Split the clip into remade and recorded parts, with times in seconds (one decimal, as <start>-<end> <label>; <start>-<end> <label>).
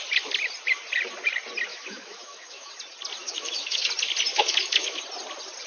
0.0-1.7 recorded; 1.7-2.7 remade; 2.7-3.2 recorded; 3.2-3.9 remade; 3.9-4.3 recorded; 4.3-5.0 remade; 5.0-5.7 recorded